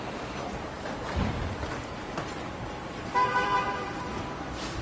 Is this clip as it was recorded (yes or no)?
no